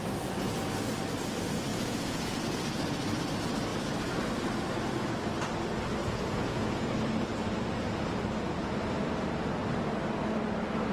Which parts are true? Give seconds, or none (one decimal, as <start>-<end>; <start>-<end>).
0.0-1.7; 2.4-6.0; 6.9-10.9